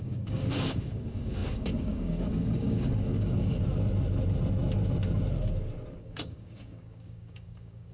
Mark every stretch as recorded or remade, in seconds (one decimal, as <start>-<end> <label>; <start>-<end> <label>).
0.0-3.6 remade; 3.6-6.0 recorded; 6.0-7.9 remade